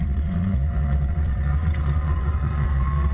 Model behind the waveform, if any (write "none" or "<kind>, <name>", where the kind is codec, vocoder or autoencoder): vocoder, WaveNeXt